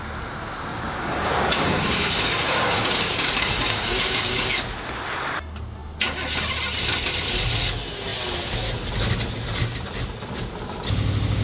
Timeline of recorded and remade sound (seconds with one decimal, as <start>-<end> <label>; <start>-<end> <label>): 0.0-0.7 recorded; 0.7-4.5 remade; 4.5-11.4 recorded